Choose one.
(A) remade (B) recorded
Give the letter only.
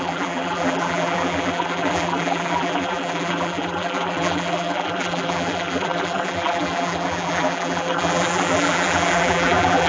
A